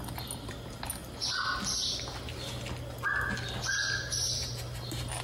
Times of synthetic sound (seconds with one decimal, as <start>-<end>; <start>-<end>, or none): none